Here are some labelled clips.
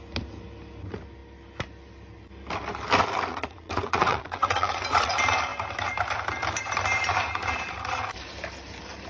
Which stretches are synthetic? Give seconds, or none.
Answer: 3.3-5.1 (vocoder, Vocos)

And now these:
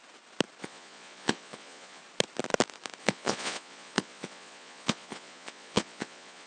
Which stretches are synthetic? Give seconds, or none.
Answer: 0.6-2.0 (vocoder, Vocos); 3.0-6.5

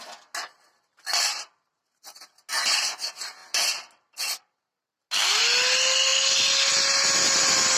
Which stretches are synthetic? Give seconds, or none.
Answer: none

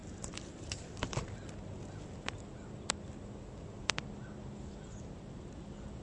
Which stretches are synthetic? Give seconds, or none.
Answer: 0.0-1.1 (vocoder, BigVGAN v2)